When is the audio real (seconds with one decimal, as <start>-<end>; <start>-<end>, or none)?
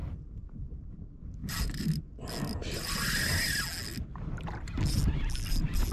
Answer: 0.7-1.4; 1.9-2.6; 3.3-5.9